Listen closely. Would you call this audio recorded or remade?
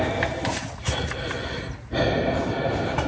recorded